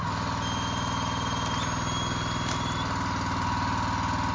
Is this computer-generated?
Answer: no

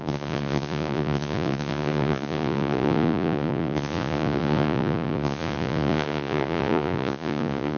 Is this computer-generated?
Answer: yes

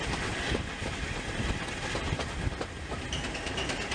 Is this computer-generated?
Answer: no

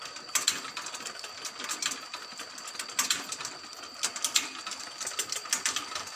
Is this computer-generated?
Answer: no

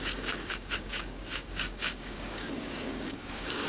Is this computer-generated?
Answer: yes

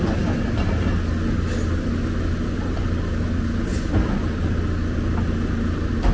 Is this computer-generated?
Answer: no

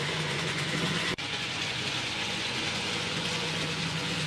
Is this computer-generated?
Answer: yes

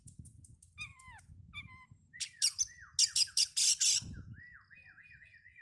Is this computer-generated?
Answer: no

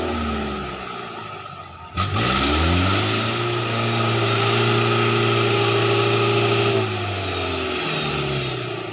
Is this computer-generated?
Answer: no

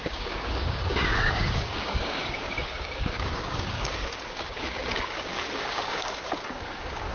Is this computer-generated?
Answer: yes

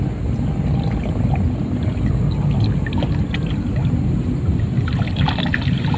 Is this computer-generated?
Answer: no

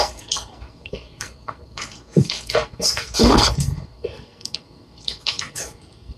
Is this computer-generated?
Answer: yes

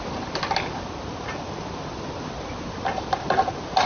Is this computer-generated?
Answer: no